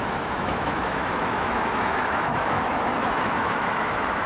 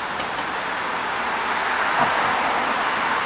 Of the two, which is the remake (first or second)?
first